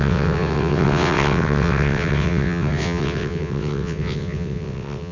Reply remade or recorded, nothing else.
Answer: remade